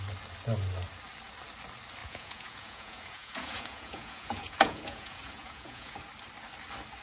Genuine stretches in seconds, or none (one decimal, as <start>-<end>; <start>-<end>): 0.0-2.0; 5.9-7.0